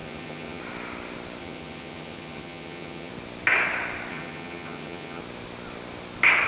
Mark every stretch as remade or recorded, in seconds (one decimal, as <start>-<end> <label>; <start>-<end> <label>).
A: 0.0-0.6 remade; 0.6-1.4 recorded; 1.4-3.1 remade; 3.1-4.1 recorded; 4.1-5.2 remade; 5.2-6.5 recorded